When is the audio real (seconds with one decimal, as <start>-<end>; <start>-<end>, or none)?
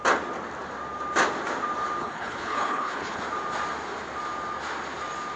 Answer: 0.0-2.0; 3.2-5.4